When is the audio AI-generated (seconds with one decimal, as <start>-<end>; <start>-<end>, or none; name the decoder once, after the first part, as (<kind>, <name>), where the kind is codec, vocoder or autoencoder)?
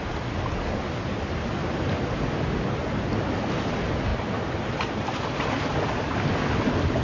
1.6-2.1 (vocoder, BigVGAN v2); 4.1-5.2